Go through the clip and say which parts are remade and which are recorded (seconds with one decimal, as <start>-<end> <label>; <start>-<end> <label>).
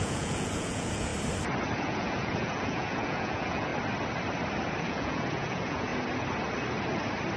0.0-1.1 remade; 1.1-1.8 recorded; 1.8-3.7 remade; 3.7-4.8 recorded; 4.8-5.9 remade; 5.9-7.4 recorded